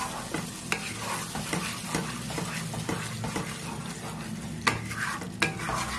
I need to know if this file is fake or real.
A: real